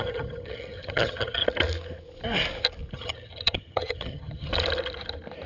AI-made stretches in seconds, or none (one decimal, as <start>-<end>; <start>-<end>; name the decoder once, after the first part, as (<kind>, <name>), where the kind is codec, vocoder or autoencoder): 0.0-1.4 (vocoder, HiFi-GAN); 2.9-4.5

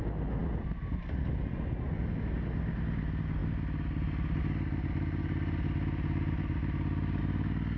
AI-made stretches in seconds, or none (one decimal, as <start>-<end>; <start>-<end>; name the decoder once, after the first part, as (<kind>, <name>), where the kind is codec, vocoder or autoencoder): none

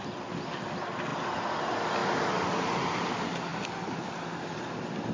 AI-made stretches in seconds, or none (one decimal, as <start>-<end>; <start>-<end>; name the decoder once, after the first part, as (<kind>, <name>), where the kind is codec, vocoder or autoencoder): none